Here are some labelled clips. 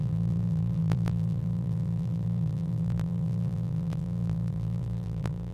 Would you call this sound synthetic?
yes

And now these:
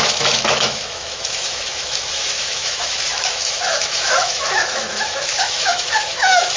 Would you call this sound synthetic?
yes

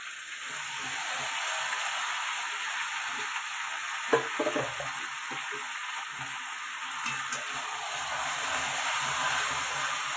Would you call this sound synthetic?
no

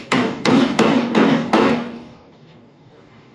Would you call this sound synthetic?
yes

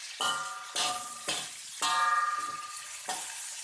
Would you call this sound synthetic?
no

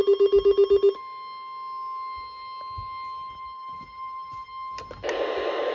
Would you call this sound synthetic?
no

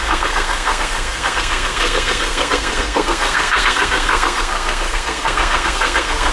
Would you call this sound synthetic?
yes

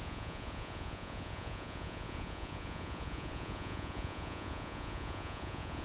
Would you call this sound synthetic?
yes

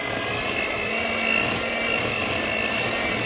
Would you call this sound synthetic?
no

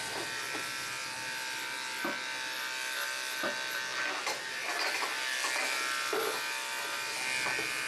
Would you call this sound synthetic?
no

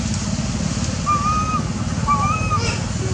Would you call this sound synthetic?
no